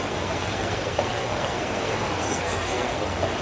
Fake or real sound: fake